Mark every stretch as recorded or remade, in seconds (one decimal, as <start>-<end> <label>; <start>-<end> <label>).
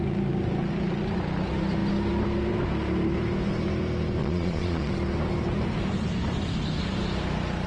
0.0-4.2 recorded; 4.2-4.9 remade; 4.9-7.7 recorded